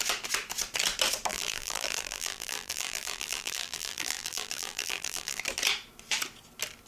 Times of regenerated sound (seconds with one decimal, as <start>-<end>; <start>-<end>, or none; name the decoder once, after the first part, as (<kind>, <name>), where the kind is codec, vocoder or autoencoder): 1.3-5.4 (vocoder, BigVGAN v2)